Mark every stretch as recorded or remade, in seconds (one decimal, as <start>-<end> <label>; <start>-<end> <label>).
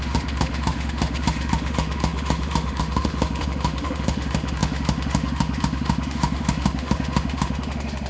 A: 0.0-8.1 remade